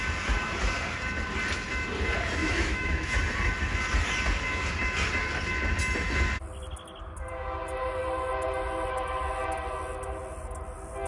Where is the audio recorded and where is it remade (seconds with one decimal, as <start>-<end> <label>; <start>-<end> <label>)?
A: 0.0-2.4 recorded; 2.4-3.2 remade; 3.2-11.1 recorded